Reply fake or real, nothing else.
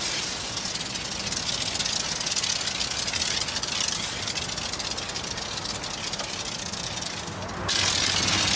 real